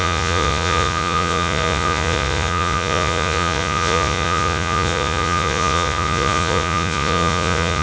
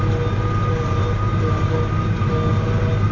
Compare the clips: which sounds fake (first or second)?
first